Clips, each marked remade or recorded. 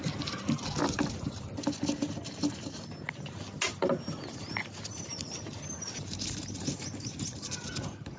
recorded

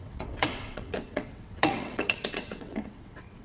remade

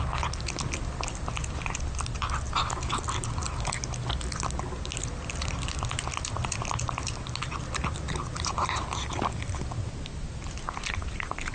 recorded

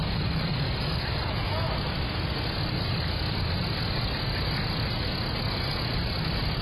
recorded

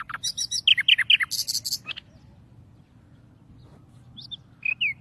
recorded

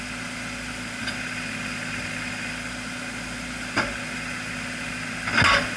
recorded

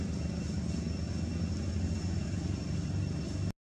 recorded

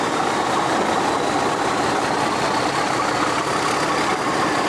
recorded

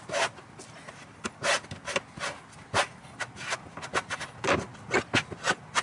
recorded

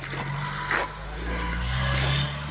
recorded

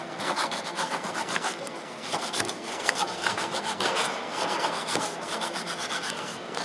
remade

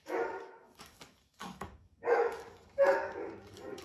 remade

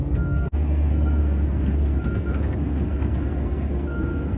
remade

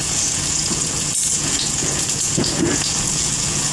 remade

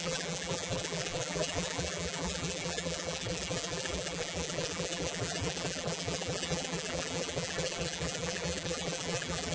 remade